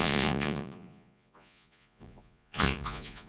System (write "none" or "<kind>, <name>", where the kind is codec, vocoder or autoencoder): vocoder, Vocos